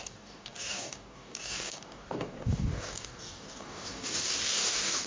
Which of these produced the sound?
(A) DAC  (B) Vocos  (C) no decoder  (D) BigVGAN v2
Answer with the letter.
A